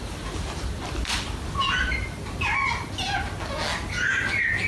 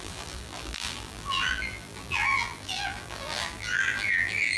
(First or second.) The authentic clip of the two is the first